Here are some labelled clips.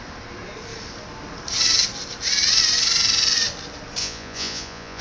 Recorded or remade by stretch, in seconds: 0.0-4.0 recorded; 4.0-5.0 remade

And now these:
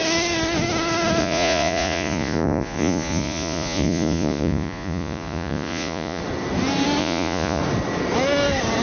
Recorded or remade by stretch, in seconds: 0.0-1.2 recorded; 1.2-6.2 remade; 6.2-7.0 recorded; 7.0-7.6 remade; 7.6-8.8 recorded

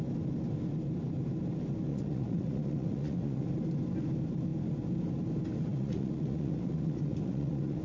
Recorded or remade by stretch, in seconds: 0.0-1.9 recorded; 1.9-3.5 remade; 3.5-5.7 recorded; 5.7-7.8 remade

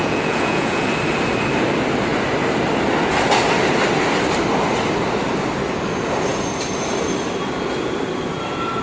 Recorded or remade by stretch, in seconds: 0.0-0.9 remade; 0.9-8.8 recorded

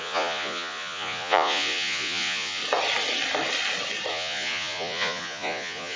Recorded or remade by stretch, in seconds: 0.0-2.6 remade; 2.6-4.1 recorded; 4.1-6.0 remade

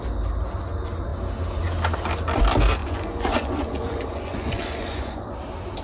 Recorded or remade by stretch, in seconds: 0.0-2.8 recorded; 2.8-5.3 remade; 5.3-5.8 recorded